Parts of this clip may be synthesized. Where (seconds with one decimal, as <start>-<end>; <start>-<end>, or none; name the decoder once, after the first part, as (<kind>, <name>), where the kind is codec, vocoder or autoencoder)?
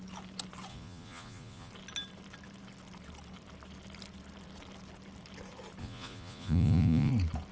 0.7-1.7 (vocoder, Vocos); 5.8-7.1